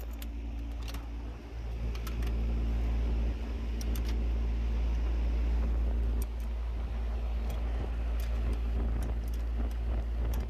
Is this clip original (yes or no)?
yes